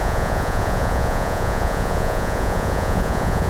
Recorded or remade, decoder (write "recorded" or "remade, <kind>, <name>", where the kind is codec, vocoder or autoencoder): remade, vocoder, Vocos